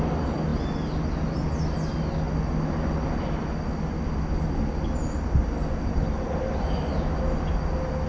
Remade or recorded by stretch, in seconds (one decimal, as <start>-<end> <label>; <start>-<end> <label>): 0.0-8.1 recorded